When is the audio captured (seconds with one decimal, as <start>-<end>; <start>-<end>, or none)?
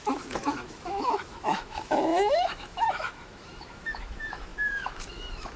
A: none